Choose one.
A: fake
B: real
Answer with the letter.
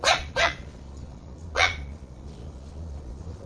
A